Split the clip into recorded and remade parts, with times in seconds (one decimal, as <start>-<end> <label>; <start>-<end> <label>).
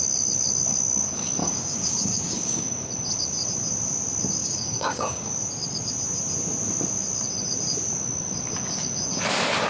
0.0-1.4 recorded; 1.4-2.9 remade; 2.9-4.4 recorded; 4.4-5.3 remade; 5.3-9.7 recorded